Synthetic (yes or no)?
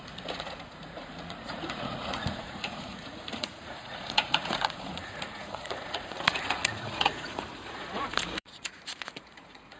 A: yes